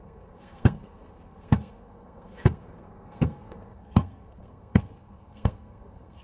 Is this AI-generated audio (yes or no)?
yes